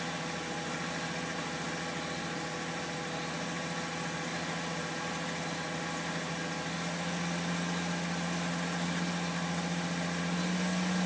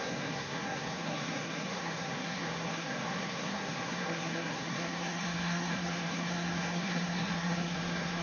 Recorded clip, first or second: first